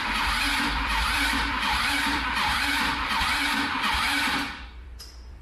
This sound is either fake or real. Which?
fake